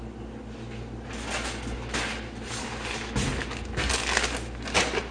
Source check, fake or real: real